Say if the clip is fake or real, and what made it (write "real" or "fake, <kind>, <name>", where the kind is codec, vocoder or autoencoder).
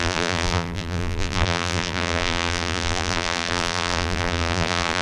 fake, vocoder, BigVGAN v2